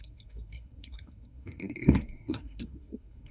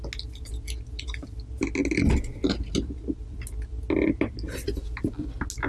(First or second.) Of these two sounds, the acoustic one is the second